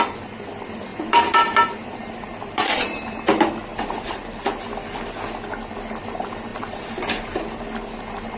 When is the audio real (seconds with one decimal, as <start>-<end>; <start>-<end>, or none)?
0.0-0.9; 3.2-3.7; 4.2-6.5; 7.6-8.4